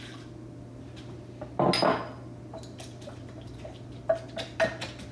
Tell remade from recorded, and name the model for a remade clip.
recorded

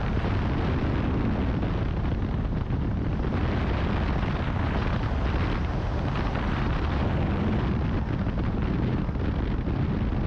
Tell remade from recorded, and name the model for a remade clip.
recorded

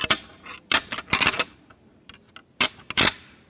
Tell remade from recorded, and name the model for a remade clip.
recorded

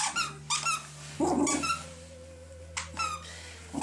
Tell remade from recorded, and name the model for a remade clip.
recorded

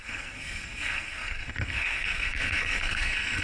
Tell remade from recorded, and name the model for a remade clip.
remade, codec, SNAC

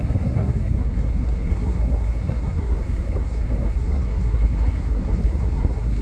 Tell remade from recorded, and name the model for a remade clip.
remade, codec, SNAC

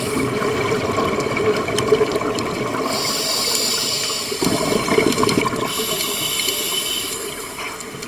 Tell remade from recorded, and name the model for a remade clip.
recorded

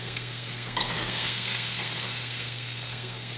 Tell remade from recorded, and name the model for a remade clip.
remade, codec, SNAC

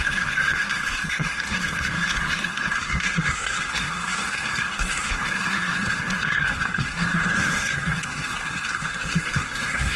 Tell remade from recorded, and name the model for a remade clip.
remade, codec, SNAC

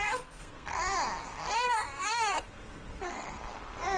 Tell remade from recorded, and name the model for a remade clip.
remade, codec, SNAC